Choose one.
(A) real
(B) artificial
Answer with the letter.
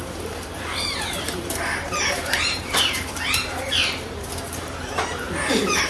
B